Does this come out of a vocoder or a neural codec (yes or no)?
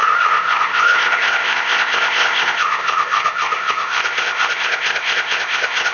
yes